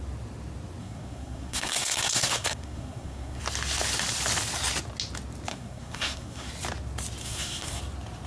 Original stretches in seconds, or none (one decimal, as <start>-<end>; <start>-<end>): 0.0-0.8; 3.4-5.5; 6.5-7.2; 7.8-8.3